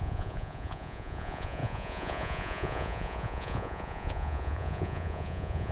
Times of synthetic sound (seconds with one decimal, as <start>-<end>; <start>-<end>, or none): 0.0-5.7